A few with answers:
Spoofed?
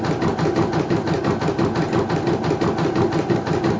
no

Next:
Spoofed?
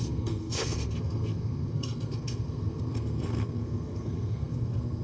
yes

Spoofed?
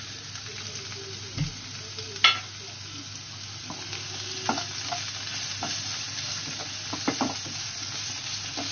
no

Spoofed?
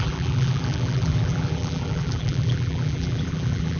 yes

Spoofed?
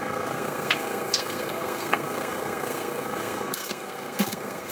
yes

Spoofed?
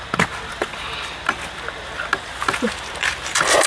no